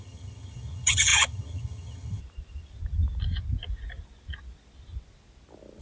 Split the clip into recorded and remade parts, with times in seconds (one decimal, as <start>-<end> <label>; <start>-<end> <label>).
0.0-2.2 remade; 2.2-5.8 recorded